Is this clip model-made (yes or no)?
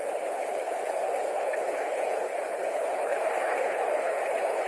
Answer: yes